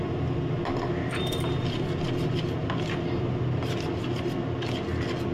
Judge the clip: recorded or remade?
recorded